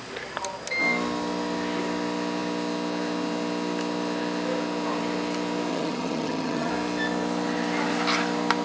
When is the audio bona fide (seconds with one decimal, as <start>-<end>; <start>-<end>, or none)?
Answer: 0.0-5.7; 6.7-8.6